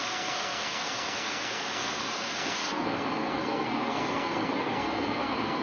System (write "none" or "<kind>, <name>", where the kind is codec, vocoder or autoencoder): codec, SNAC